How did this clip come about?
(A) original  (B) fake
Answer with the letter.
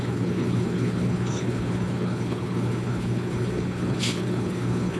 B